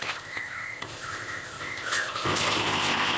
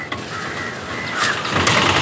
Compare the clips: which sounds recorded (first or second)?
second